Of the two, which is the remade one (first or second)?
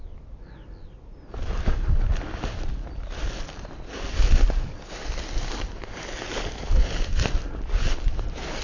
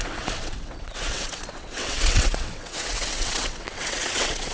second